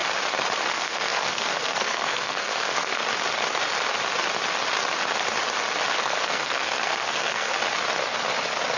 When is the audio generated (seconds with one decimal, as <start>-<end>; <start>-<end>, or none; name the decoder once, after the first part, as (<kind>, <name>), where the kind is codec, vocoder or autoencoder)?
0.7-3.0 (codec, SNAC); 5.9-7.5